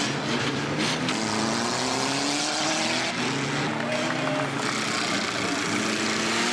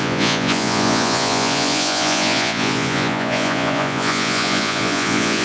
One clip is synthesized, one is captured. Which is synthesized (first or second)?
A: second